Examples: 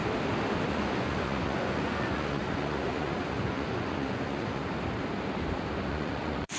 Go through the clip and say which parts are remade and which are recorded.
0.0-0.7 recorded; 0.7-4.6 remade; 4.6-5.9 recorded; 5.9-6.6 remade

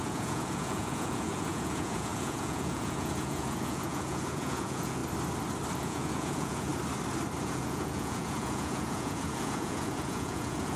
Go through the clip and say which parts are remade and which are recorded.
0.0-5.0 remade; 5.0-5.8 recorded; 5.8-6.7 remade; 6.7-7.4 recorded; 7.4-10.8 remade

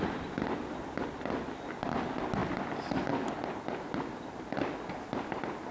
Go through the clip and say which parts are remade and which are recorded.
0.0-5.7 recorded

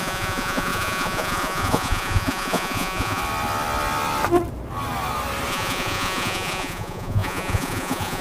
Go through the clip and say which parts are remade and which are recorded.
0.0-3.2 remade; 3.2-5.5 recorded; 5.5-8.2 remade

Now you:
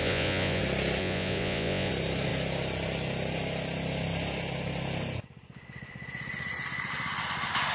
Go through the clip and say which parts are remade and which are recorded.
0.0-0.6 remade; 0.6-1.0 recorded; 1.0-1.9 remade; 1.9-7.7 recorded